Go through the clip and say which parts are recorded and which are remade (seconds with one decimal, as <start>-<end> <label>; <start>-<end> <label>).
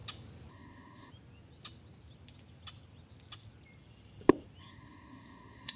0.0-0.5 recorded; 0.5-1.1 remade; 1.1-4.6 recorded; 4.6-5.8 remade